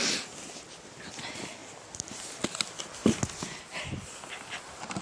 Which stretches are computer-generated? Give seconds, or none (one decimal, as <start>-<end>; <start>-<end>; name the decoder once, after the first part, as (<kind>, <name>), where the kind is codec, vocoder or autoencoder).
none